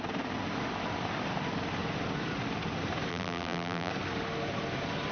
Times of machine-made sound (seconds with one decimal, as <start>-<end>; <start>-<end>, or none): 3.1-3.9